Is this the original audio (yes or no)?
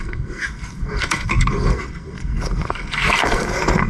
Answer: no